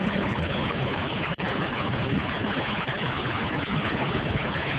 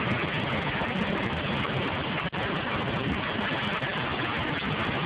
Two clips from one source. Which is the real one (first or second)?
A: second